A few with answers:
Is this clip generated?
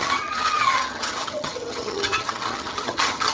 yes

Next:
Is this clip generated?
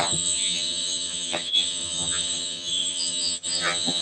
yes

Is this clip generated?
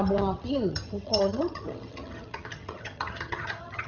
yes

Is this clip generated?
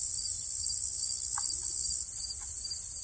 no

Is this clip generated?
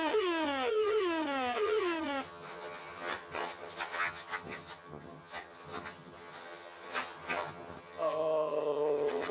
yes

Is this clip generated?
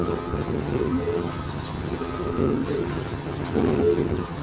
yes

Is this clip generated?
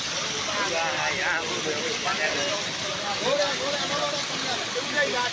no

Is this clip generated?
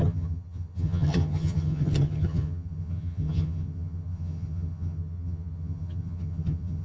yes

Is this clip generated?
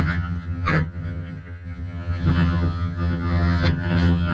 yes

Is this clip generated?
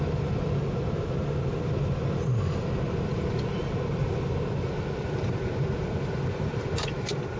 no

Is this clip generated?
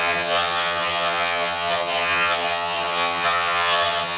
yes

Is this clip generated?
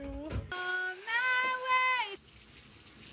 no